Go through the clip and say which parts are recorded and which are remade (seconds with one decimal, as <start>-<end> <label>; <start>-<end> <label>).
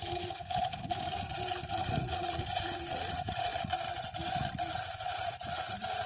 0.0-0.7 remade; 0.7-1.7 recorded; 1.7-3.5 remade; 3.5-4.7 recorded; 4.7-6.1 remade